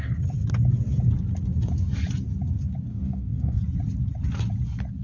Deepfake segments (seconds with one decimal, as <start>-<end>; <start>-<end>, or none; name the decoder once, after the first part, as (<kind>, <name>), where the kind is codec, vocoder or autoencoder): 2.9-3.6 (codec, DAC)